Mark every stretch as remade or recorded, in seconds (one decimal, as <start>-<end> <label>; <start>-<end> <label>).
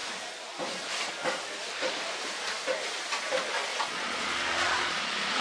0.0-3.7 recorded; 3.7-5.4 remade